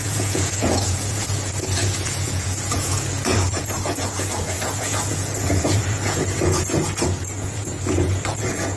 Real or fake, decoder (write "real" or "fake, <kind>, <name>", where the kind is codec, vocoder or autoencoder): fake, vocoder, Vocos